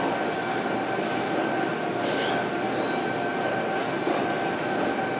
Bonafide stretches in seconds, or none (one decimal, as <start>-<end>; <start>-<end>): 0.0-3.8